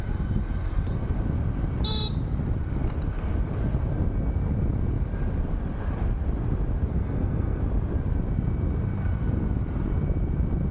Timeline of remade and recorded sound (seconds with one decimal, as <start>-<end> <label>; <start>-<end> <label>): 0.0-6.9 recorded; 6.9-7.6 remade; 7.6-10.7 recorded